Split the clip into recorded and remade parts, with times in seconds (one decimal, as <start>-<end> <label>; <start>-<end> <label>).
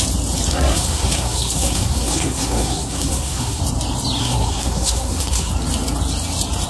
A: 0.0-0.5 recorded; 0.5-3.6 remade; 3.6-4.2 recorded; 4.2-5.5 remade; 5.5-6.7 recorded